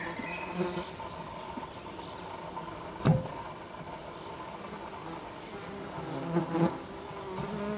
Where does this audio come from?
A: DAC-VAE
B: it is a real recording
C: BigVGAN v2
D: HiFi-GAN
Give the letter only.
B